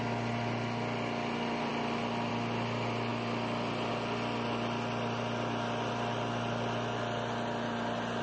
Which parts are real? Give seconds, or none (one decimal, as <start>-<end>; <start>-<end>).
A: 0.0-8.2